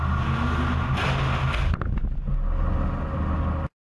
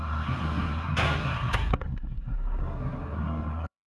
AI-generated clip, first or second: second